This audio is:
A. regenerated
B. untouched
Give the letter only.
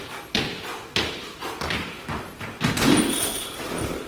B